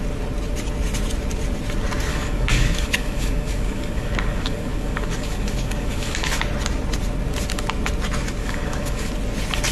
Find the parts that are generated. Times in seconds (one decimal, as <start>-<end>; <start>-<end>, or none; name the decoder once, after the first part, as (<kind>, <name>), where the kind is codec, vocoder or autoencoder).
2.1-6.4 (codec, DAC); 8.4-9.1